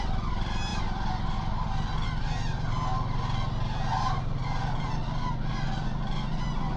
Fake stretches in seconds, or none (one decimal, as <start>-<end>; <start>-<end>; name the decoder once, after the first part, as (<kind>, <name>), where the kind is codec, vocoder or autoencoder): none